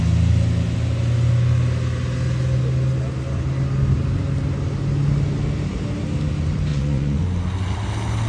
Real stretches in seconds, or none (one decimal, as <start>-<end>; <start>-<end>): 0.0-6.7; 7.2-8.3